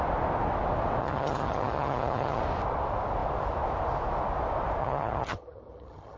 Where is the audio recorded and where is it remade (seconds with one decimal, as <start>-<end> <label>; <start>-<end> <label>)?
0.0-1.0 recorded; 1.0-2.4 remade; 2.4-4.8 recorded; 4.8-6.2 remade